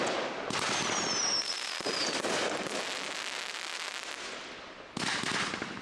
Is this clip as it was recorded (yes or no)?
yes